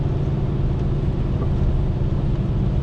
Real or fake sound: real